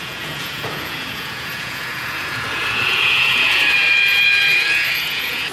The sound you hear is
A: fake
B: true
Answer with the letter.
A